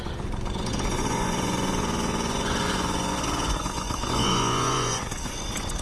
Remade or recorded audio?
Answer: remade